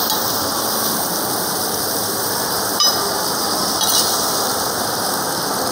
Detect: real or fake fake